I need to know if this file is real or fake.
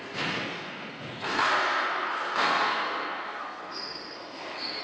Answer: fake